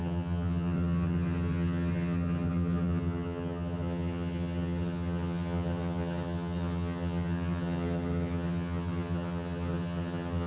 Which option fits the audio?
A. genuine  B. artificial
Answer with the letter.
B